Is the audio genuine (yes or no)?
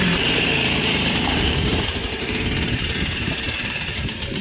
no